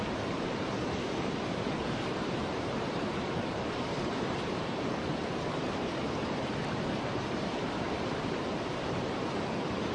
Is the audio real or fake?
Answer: fake